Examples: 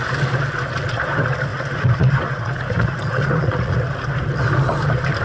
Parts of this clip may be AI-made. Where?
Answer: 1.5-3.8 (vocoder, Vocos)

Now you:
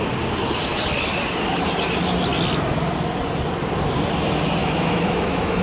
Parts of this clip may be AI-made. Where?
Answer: 4.6-5.6 (autoencoder, DAC-VAE)

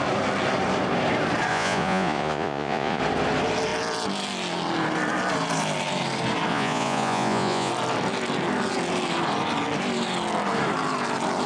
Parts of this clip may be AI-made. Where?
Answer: 1.5-3.0 (vocoder, Vocos); 6.5-7.7

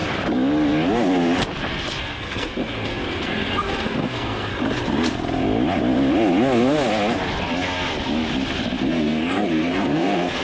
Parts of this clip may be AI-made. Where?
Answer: 2.0-4.5 (codec, SNAC); 8.8-10.4

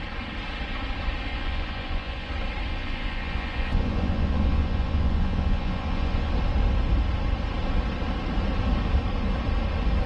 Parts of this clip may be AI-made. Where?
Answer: 1.3-2.3 (vocoder, Vocos); 2.7-6.3